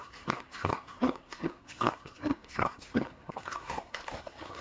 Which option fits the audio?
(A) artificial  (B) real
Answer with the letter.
A